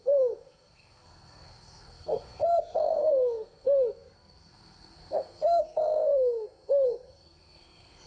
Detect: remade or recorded remade